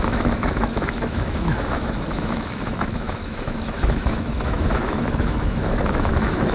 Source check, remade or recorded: remade